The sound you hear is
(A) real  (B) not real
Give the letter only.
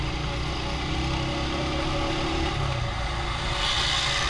A